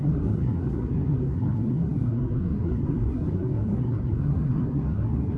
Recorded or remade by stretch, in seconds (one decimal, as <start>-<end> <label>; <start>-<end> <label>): 0.0-5.4 remade